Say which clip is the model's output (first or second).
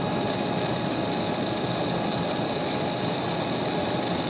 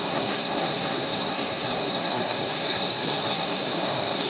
second